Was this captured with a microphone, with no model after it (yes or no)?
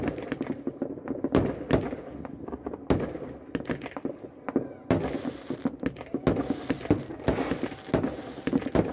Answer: yes